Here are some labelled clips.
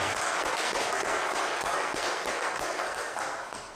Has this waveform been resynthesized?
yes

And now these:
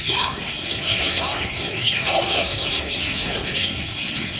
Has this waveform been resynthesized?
yes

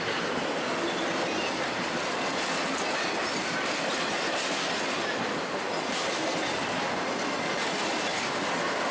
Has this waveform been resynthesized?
no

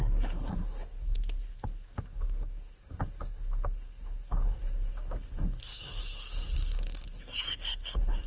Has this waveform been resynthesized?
yes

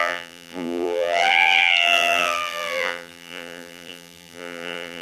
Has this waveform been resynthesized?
yes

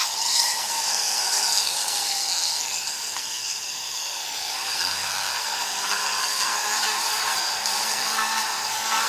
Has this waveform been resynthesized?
yes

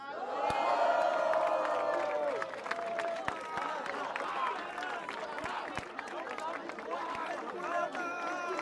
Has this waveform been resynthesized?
no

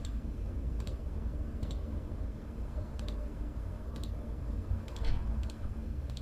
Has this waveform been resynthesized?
yes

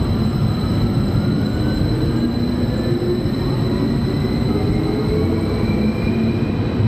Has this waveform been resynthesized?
no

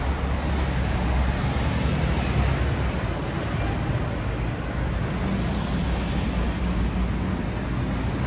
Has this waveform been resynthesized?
no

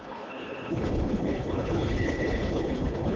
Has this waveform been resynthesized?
yes